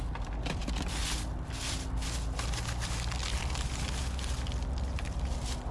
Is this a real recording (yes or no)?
yes